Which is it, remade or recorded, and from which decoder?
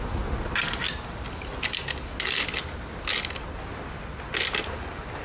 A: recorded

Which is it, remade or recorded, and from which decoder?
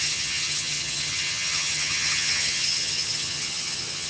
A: remade, vocoder, HiFi-GAN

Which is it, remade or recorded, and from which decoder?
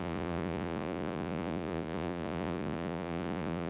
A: remade, vocoder, Vocos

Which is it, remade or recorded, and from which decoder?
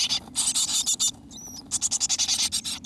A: recorded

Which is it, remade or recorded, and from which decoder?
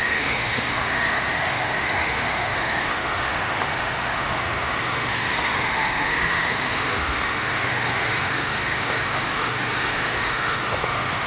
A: remade, autoencoder, DAC-VAE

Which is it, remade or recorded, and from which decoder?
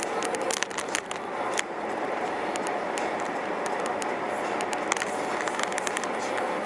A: recorded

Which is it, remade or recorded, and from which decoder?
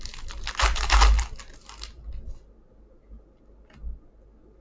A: recorded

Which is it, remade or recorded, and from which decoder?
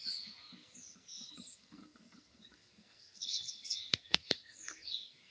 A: remade, codec, SNAC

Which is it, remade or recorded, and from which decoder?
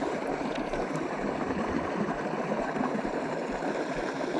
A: remade, vocoder, BigVGAN v2